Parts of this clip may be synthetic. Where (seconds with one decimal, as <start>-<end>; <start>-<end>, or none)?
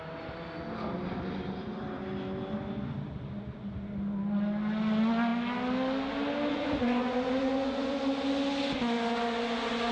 6.5-8.0